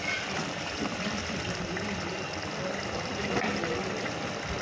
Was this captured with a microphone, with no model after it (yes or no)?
no